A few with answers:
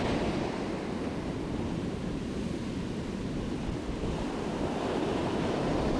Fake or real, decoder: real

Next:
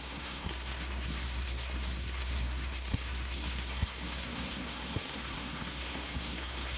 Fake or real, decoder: fake, codec, SNAC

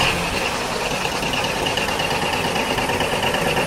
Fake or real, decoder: real